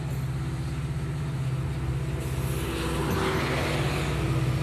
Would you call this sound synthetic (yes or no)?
no